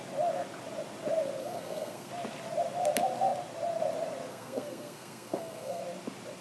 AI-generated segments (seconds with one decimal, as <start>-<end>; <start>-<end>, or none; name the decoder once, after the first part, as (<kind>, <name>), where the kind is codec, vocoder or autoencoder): 1.4-2.1 (codec, SNAC); 4.3-5.8